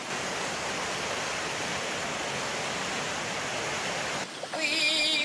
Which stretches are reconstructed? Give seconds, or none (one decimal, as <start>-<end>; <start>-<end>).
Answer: none